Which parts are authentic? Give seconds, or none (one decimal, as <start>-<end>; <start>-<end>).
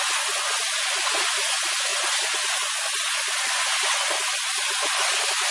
none